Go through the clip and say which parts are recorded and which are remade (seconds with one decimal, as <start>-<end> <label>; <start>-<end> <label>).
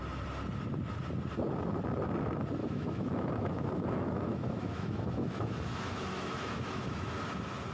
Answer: 0.0-2.6 recorded; 2.6-7.2 remade; 7.2-7.7 recorded